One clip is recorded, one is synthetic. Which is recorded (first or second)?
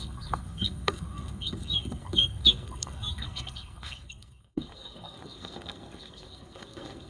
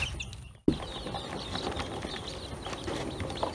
second